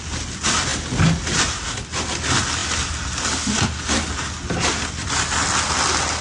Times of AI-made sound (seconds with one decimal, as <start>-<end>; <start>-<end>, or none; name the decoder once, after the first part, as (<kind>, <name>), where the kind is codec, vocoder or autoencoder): none